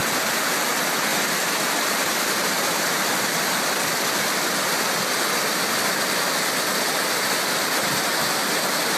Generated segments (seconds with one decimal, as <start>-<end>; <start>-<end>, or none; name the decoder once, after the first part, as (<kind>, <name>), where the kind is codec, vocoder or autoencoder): 1.1-4.9 (vocoder, BigVGAN v2)

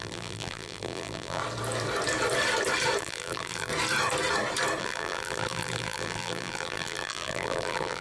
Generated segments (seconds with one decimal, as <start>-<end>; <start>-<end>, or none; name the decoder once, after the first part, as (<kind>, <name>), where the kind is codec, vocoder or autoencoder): 0.0-1.4 (vocoder, BigVGAN v2); 3.0-3.7; 4.8-8.0